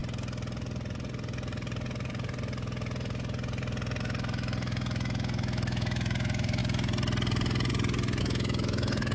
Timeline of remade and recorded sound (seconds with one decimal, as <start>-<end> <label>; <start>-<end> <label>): 0.0-4.0 recorded; 4.0-6.6 remade; 6.6-8.2 recorded; 8.2-9.1 remade